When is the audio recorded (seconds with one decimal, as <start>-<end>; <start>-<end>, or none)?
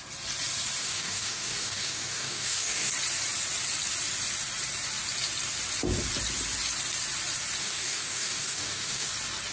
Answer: 0.0-0.8; 2.9-7.6; 9.1-9.5